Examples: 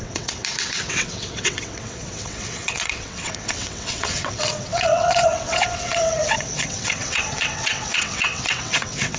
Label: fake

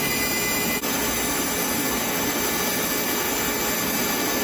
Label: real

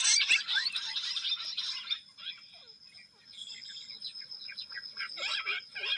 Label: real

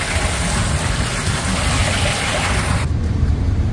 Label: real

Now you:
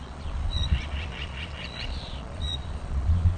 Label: fake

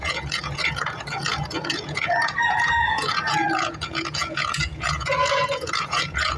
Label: fake